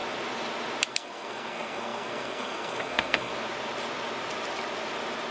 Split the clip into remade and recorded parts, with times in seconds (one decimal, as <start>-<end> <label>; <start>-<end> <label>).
0.0-0.9 recorded; 0.9-3.3 remade; 3.3-5.3 recorded